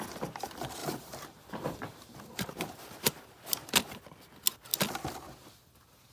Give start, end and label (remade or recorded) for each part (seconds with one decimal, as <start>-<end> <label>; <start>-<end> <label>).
0.0-0.8 recorded; 0.8-2.9 remade; 2.9-6.1 recorded